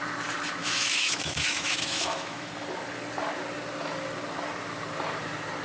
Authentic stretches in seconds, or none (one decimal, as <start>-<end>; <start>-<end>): 0.0-0.6; 2.5-5.6